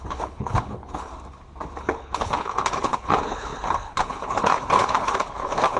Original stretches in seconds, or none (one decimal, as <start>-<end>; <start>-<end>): 1.1-1.8